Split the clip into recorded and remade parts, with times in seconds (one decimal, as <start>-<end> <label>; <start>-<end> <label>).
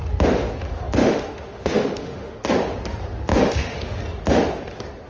0.0-1.0 recorded; 1.0-2.4 remade; 2.4-3.3 recorded; 3.3-4.0 remade; 4.0-5.1 recorded